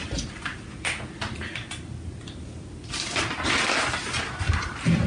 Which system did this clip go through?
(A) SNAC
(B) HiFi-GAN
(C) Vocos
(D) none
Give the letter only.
D